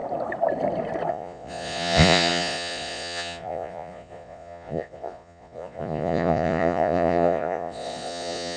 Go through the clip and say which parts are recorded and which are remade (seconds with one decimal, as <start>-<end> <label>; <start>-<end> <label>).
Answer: 0.0-1.1 recorded; 1.1-8.6 remade